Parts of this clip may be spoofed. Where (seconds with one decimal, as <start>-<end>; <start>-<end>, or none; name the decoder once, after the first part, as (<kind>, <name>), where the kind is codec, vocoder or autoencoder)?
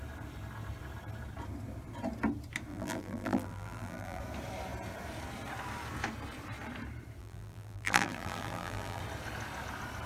2.7-4.2 (vocoder, BigVGAN v2); 7.2-9.0